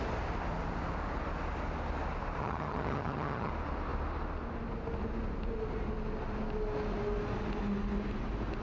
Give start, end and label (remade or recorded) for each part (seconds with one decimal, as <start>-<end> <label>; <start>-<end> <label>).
0.0-2.4 recorded; 2.4-3.5 remade; 3.5-8.6 recorded